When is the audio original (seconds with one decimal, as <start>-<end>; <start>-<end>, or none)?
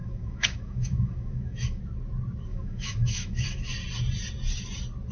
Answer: 1.8-2.5; 3.7-5.1